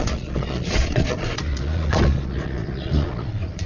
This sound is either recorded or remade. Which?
remade